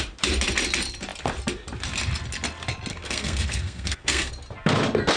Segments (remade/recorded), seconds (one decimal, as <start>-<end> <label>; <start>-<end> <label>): 0.0-2.9 recorded; 2.9-4.3 remade; 4.3-5.2 recorded